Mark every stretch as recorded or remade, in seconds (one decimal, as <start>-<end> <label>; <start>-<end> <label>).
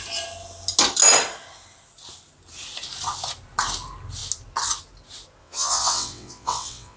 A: 0.0-5.4 recorded; 5.4-7.0 remade